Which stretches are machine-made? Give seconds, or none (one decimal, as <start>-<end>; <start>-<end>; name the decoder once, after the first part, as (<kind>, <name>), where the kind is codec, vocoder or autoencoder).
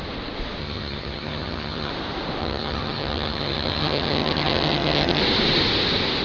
0.6-1.9 (vocoder, HiFi-GAN); 2.4-5.2